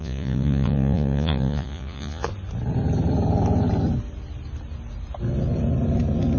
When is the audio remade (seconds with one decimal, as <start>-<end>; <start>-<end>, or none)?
0.0-2.3